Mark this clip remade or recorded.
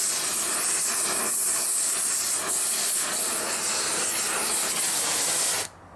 recorded